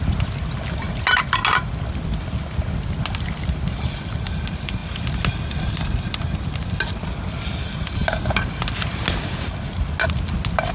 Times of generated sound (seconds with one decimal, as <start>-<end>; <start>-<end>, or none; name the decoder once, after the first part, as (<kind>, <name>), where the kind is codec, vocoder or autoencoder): none